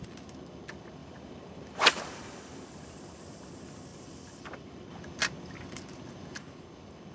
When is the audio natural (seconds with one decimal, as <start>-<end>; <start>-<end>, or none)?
0.0-1.0; 2.6-3.9; 5.0-7.1